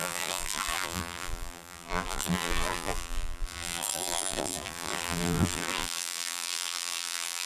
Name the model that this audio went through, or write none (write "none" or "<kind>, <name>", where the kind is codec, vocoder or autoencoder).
vocoder, BigVGAN v2